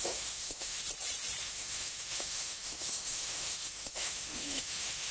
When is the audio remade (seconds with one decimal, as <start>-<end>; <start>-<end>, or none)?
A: 0.0-0.8; 1.4-5.1